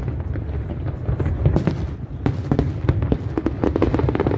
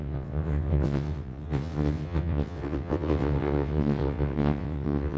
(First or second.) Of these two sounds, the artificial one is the second